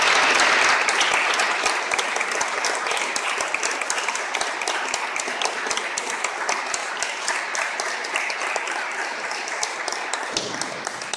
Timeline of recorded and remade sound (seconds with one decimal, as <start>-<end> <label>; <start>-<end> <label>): 0.0-6.8 recorded; 6.8-9.0 remade; 9.0-11.2 recorded